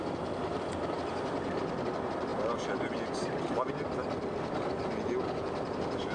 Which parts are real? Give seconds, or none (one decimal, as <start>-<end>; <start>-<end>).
0.0-6.1